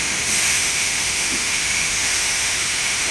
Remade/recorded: remade